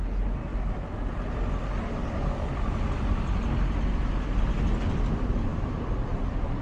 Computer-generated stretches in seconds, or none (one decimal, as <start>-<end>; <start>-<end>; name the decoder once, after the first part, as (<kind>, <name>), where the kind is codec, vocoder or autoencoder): none